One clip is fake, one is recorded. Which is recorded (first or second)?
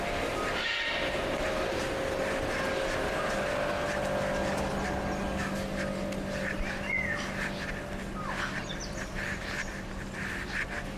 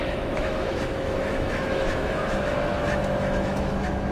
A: first